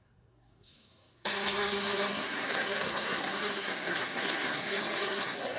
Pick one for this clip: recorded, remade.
remade